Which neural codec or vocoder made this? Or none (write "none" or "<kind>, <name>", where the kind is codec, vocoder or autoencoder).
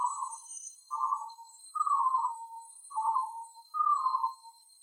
codec, SNAC